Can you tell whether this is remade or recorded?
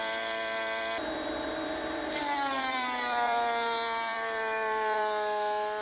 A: remade